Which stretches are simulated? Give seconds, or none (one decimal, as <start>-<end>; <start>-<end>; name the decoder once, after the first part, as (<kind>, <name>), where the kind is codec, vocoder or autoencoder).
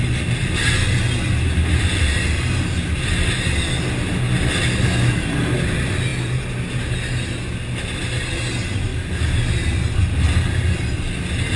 none